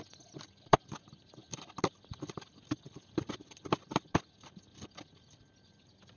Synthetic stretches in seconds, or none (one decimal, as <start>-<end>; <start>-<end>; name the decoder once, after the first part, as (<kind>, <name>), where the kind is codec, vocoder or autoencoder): none